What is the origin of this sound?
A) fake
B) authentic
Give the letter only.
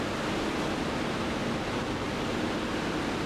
B